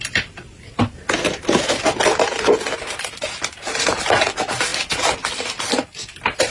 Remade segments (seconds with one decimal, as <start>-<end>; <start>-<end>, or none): none